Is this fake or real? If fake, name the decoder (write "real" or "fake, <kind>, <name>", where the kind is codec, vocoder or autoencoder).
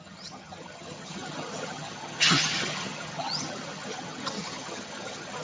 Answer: fake, vocoder, HiFi-GAN